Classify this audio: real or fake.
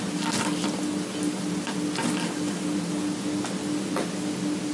real